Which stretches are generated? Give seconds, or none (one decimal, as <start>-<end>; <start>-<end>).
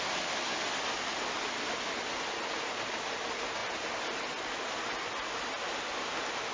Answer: none